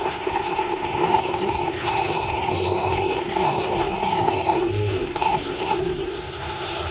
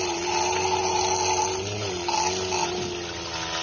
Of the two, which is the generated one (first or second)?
first